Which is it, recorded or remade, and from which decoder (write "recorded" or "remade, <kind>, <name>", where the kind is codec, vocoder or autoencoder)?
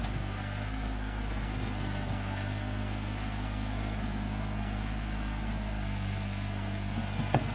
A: remade, codec, SNAC